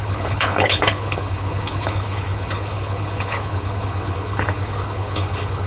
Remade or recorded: remade